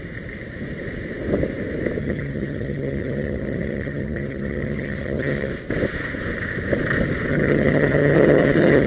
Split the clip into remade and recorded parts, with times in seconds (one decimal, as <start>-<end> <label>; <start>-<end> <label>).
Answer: 0.0-2.0 recorded; 2.0-5.5 remade; 5.5-7.3 recorded; 7.3-8.9 remade